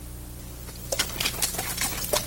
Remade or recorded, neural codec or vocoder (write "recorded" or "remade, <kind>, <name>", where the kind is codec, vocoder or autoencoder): recorded